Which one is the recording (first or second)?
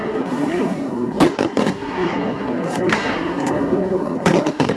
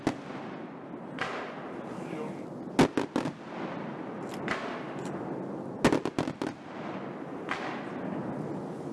second